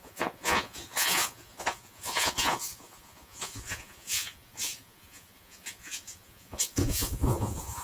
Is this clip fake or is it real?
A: fake